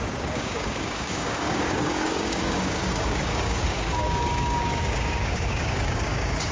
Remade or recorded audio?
remade